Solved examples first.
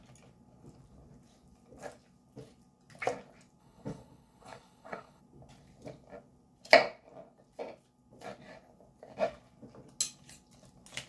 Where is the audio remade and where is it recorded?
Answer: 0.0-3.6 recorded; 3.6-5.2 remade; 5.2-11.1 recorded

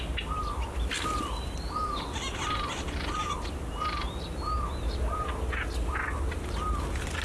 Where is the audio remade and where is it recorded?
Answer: 0.0-7.2 recorded

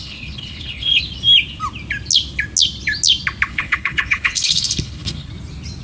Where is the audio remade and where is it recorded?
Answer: 0.0-1.0 remade; 1.0-3.5 recorded; 3.5-5.3 remade; 5.3-5.8 recorded

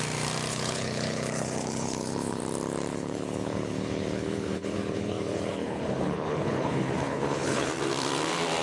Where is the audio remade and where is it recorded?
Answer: 0.0-0.5 recorded; 0.5-2.4 remade; 2.4-2.9 recorded; 2.9-7.7 remade; 7.7-8.6 recorded

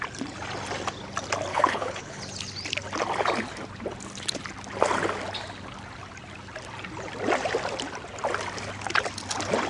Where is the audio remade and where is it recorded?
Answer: 0.0-1.5 recorded; 1.5-2.2 remade; 2.2-9.7 recorded

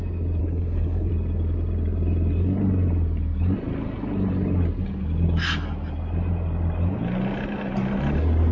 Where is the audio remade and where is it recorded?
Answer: 0.0-0.4 recorded; 0.4-1.1 remade; 1.1-8.5 recorded

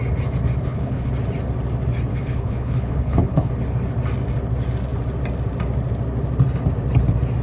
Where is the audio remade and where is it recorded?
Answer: 0.0-0.6 recorded; 0.6-1.1 remade; 1.1-2.1 recorded; 2.1-3.5 remade; 3.5-7.4 recorded

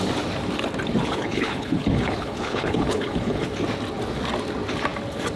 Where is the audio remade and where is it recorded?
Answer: 0.0-1.0 recorded; 1.0-3.5 remade; 3.5-5.4 recorded